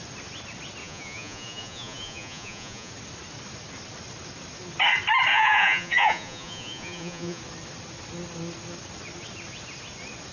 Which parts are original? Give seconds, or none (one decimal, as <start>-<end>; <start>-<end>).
0.0-0.8; 2.9-5.3; 7.4-10.3